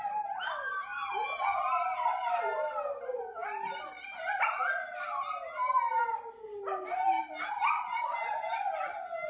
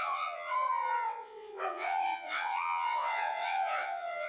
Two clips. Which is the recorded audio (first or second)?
first